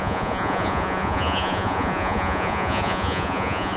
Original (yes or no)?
no